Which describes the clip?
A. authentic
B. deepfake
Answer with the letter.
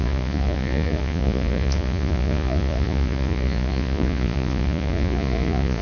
B